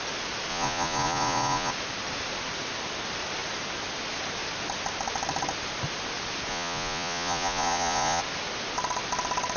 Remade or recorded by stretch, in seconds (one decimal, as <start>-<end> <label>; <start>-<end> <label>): 0.0-0.5 recorded; 0.5-1.7 remade; 1.7-6.5 recorded; 6.5-8.2 remade; 8.2-9.6 recorded